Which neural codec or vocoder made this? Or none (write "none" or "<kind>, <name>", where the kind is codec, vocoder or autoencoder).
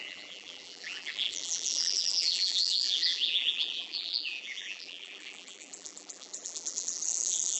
vocoder, BigVGAN v2